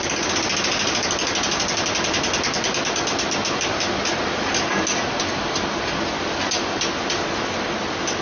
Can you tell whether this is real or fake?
real